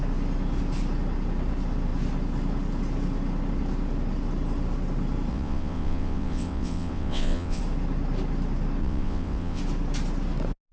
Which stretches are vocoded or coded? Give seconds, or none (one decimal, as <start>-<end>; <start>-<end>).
5.3-7.6; 8.8-9.6